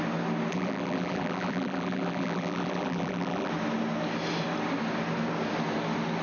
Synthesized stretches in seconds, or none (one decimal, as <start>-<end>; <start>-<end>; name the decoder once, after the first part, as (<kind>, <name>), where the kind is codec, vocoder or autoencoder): 0.5-3.5 (vocoder, BigVGAN v2)